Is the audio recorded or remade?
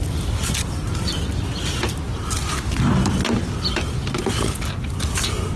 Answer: recorded